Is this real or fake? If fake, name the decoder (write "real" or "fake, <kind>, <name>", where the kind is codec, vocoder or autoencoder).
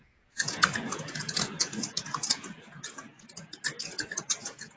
fake, vocoder, Vocos